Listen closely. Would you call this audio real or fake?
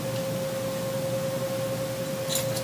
real